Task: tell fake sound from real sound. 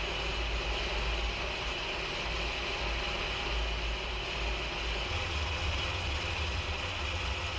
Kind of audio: real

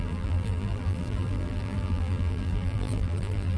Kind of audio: fake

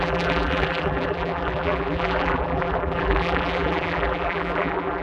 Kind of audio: fake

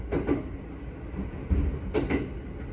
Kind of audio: real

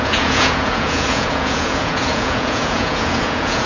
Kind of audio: fake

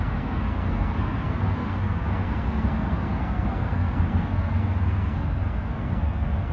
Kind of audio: fake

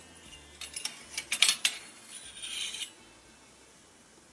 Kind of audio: real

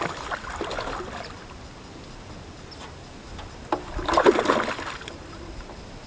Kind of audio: real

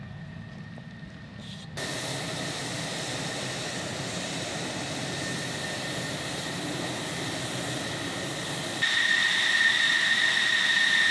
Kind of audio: real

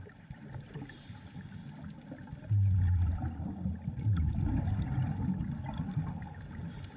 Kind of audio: real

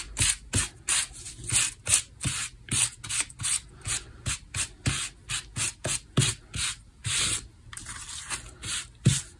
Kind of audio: real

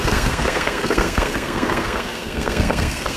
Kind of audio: fake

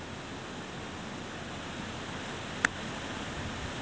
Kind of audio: real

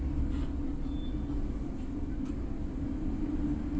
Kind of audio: real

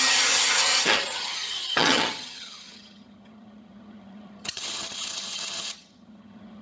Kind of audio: fake